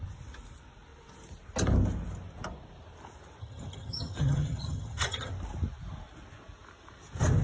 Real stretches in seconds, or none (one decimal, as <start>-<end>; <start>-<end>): 0.0-3.4; 5.3-7.4